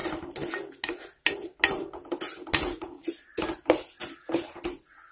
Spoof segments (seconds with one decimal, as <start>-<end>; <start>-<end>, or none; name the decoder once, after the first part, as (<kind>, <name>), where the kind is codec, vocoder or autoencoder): none